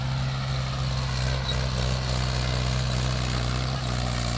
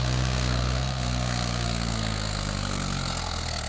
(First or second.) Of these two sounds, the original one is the first